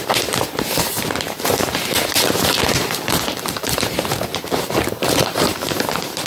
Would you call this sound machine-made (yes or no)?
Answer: yes